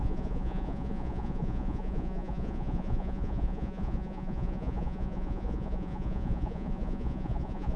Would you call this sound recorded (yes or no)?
no